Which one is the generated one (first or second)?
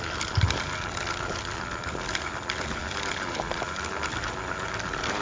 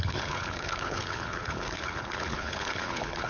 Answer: second